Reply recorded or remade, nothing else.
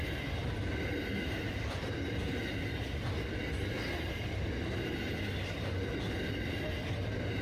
recorded